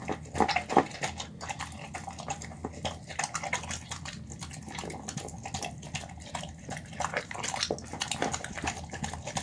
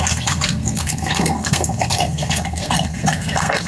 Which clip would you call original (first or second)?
first